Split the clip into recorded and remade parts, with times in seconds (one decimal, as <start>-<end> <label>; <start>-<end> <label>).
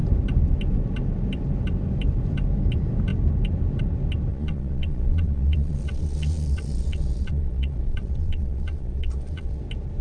0.0-4.3 recorded; 4.3-9.6 remade; 9.6-10.0 recorded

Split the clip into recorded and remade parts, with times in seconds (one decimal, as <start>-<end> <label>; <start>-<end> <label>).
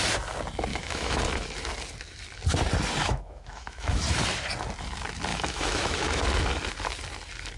0.0-0.7 recorded; 0.7-1.2 remade; 1.2-3.0 recorded; 3.0-4.0 remade; 4.0-5.3 recorded; 5.3-6.2 remade; 6.2-7.6 recorded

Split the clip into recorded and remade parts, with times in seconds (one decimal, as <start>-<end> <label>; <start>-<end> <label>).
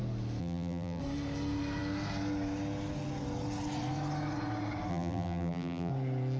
0.0-0.4 recorded; 0.4-1.0 remade; 1.0-4.9 recorded; 4.9-5.9 remade; 5.9-6.4 recorded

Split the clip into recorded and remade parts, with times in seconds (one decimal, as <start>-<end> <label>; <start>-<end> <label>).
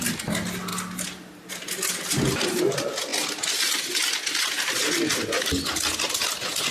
0.0-6.7 recorded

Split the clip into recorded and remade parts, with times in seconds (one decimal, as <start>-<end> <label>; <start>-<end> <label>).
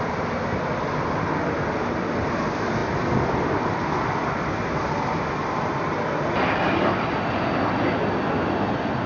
0.0-9.1 recorded